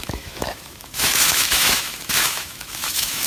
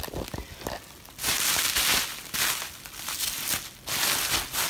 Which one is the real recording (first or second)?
second